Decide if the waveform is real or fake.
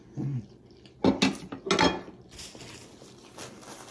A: real